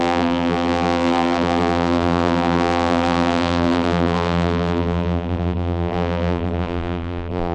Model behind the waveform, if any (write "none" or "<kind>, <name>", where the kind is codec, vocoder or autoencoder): vocoder, BigVGAN v2